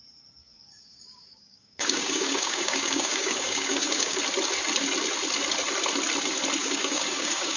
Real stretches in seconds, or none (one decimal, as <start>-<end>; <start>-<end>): 0.0-0.4; 4.2-6.6